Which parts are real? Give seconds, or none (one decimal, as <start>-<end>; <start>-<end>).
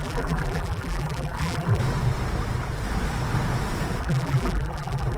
1.8-4.0